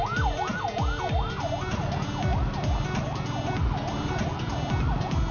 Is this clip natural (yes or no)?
yes